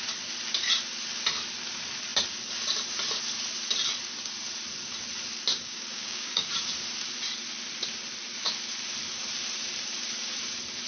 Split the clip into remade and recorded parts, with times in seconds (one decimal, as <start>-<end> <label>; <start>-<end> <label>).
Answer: 0.0-5.5 recorded; 5.5-6.5 remade; 6.5-10.9 recorded

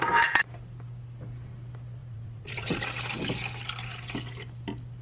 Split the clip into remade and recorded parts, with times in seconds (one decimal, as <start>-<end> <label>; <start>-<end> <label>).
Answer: 0.0-2.0 recorded; 2.0-2.8 remade; 2.8-5.0 recorded

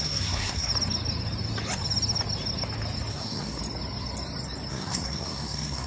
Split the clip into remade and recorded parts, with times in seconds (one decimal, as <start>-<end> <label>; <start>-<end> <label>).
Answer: 0.0-0.7 remade; 0.7-3.1 recorded; 3.1-3.6 remade; 3.6-4.7 recorded; 4.7-5.9 remade

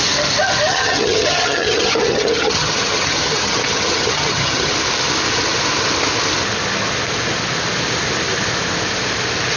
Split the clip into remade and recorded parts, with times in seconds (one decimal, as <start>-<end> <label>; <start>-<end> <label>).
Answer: 0.0-0.7 recorded; 0.7-4.7 remade; 4.7-9.6 recorded

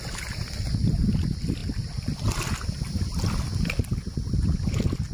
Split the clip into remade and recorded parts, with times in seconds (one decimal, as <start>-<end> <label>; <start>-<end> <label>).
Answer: 0.0-5.1 recorded